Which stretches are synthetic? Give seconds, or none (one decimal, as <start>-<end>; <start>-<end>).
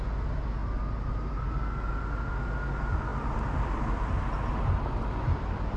none